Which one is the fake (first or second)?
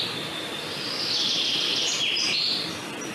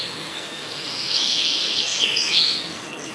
second